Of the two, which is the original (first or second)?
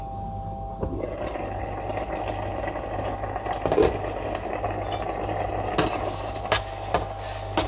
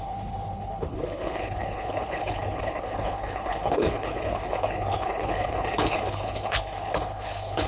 first